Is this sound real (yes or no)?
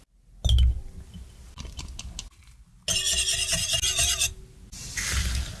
yes